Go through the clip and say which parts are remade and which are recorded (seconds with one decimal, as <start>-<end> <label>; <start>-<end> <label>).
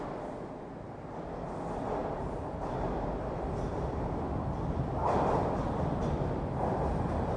0.0-2.0 recorded; 2.0-6.4 remade; 6.4-7.4 recorded